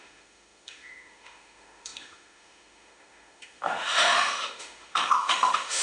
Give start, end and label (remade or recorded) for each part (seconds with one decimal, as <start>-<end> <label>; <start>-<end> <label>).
0.0-5.8 remade